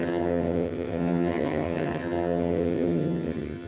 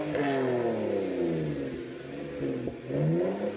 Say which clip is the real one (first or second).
second